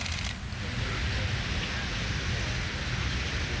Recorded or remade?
recorded